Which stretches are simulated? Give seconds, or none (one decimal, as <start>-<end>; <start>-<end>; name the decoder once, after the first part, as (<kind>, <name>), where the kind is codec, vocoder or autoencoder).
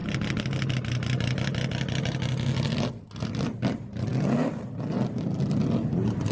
none